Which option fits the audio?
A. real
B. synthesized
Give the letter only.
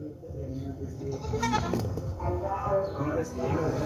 B